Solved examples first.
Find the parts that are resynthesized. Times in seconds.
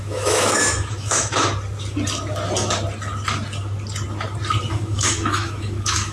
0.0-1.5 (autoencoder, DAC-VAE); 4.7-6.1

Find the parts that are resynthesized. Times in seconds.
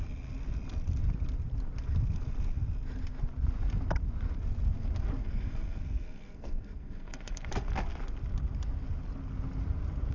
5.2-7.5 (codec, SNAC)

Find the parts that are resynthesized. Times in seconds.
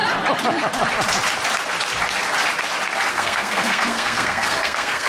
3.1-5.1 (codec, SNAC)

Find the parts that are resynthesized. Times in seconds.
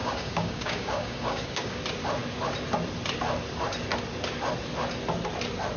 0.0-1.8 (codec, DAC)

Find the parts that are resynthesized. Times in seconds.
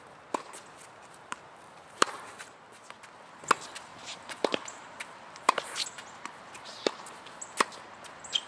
1.0-2.6 (vocoder, BigVGAN v2); 3.9-7.3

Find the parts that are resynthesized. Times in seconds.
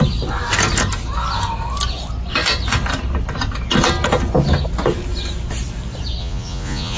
6.2-7.0 (vocoder, Vocos)